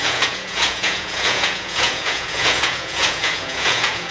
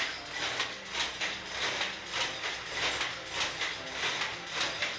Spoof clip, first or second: first